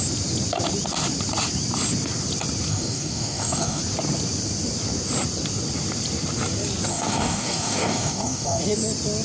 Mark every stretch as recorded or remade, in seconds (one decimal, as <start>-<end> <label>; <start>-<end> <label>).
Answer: 0.0-2.7 recorded; 2.7-3.8 remade; 3.8-6.9 recorded; 6.9-8.6 remade; 8.6-9.2 recorded